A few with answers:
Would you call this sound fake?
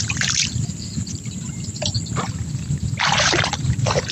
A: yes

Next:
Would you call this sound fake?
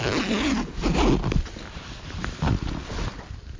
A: no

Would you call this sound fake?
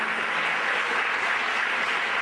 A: no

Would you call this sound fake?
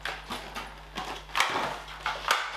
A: no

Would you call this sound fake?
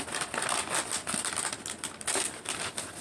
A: no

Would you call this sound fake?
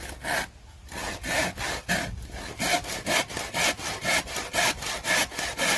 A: no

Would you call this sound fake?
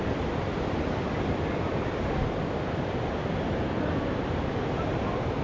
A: yes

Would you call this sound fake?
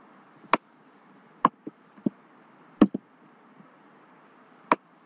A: no